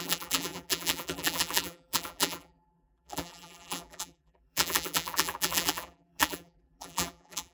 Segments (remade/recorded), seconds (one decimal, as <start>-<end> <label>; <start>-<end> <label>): 0.0-7.5 remade